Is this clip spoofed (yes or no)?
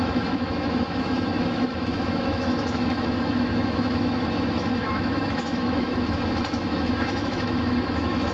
yes